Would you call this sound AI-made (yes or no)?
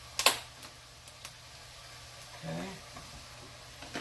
no